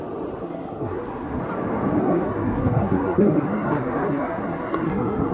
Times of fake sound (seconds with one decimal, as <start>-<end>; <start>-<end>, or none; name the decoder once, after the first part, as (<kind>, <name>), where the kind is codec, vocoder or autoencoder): 0.4-1.4 (codec, SNAC); 2.0-5.3